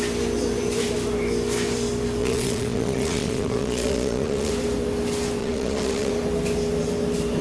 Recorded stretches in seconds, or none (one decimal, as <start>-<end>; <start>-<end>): 0.0-2.2; 4.5-5.4; 6.1-7.4

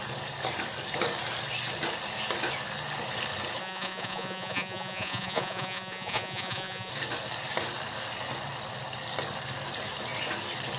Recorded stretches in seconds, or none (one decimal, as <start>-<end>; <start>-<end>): 0.0-3.6; 6.9-10.8

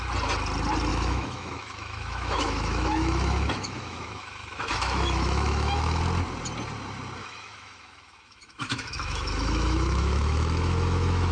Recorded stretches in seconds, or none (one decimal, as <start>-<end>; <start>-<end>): 0.0-0.9; 6.0-7.2

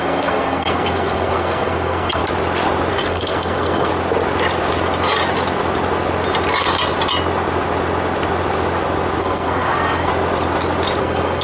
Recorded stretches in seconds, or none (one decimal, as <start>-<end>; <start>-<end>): 2.2-2.9; 3.9-9.2; 10.1-11.0

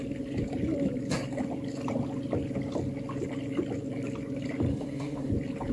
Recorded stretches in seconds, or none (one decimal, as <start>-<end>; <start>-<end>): 0.0-4.7; 5.3-5.7

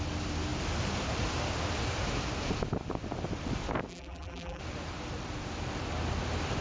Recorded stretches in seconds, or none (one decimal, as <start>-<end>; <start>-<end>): 0.0-3.9; 4.6-6.6

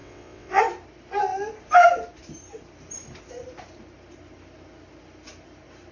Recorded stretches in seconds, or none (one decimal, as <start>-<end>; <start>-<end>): 0.6-5.9

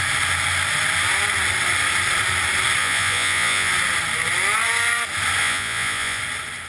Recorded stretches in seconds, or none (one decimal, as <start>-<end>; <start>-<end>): 0.0-2.8; 3.7-5.4; 6.2-6.7